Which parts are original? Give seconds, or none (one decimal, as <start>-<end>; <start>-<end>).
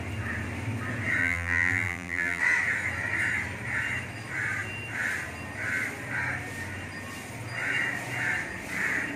0.0-1.2; 2.4-9.2